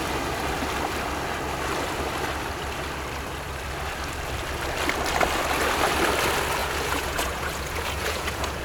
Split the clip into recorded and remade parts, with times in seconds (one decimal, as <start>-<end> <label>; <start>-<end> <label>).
0.0-6.6 recorded; 6.6-8.6 remade